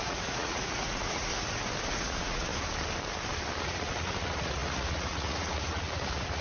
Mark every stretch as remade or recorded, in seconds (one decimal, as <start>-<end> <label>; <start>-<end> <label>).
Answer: 0.0-1.3 remade; 1.3-1.9 recorded; 1.9-2.5 remade; 2.5-3.6 recorded; 3.6-6.4 remade